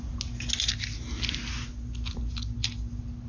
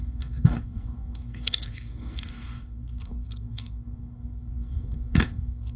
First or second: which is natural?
first